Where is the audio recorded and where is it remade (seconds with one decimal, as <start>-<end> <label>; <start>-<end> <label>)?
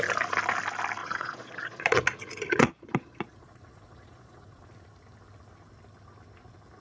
0.0-1.0 recorded; 1.0-2.0 remade; 2.0-2.5 recorded; 2.5-4.7 remade; 4.7-6.8 recorded